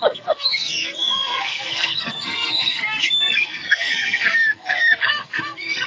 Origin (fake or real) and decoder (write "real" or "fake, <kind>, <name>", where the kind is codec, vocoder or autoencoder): fake, codec, SNAC